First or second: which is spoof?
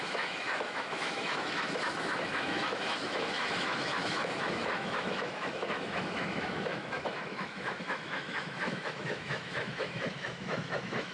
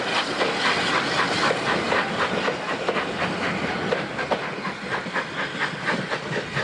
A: first